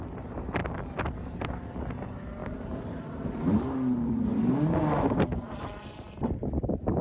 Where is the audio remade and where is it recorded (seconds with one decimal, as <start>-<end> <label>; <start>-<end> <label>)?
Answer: 0.0-7.0 recorded

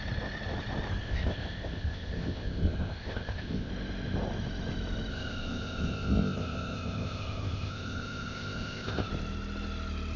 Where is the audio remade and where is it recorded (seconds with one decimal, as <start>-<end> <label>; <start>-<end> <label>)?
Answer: 0.0-1.0 recorded; 1.0-3.7 remade; 3.7-5.1 recorded; 5.1-9.1 remade; 9.1-10.2 recorded

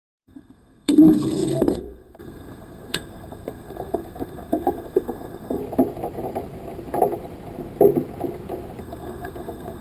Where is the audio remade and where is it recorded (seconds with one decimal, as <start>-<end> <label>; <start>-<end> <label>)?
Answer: 0.0-5.6 remade; 5.6-8.8 recorded; 8.8-9.8 remade

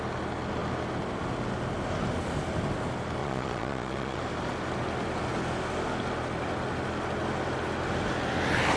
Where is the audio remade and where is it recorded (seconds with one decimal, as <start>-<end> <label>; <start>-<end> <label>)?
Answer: 0.0-3.2 recorded; 3.2-4.2 remade; 4.2-8.8 recorded

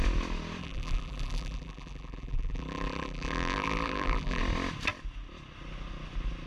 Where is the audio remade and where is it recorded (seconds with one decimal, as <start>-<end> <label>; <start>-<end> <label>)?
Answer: 0.0-0.6 recorded; 0.6-4.4 remade; 4.4-6.5 recorded

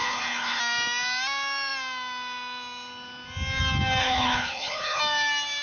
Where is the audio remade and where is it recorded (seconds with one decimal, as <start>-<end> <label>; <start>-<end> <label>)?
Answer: 0.0-0.6 remade; 0.6-4.0 recorded; 4.0-5.0 remade; 5.0-5.6 recorded

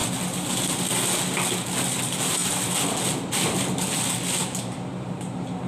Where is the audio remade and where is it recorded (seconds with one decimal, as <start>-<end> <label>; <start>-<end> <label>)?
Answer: 0.0-2.0 recorded; 2.0-2.4 remade; 2.4-4.6 recorded; 4.6-5.7 remade

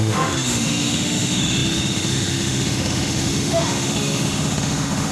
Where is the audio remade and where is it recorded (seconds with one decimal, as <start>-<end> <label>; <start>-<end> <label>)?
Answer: 0.0-5.1 remade